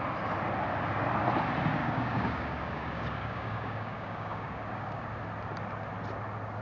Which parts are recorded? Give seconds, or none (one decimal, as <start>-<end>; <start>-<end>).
0.0-1.8; 5.1-6.6